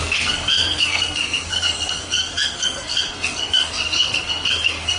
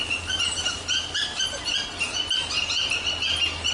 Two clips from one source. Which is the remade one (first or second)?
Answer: first